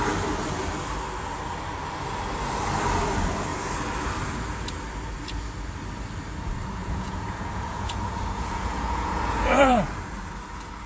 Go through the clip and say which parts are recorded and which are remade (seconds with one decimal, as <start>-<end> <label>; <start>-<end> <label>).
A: 0.0-6.8 recorded; 6.8-10.0 remade; 10.0-10.9 recorded